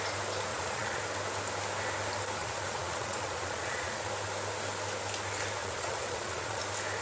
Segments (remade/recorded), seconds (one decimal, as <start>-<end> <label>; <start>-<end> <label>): 0.0-0.5 recorded; 0.5-1.0 remade; 1.0-2.4 recorded; 2.4-4.1 remade; 4.1-5.6 recorded; 5.6-6.6 remade; 6.6-7.0 recorded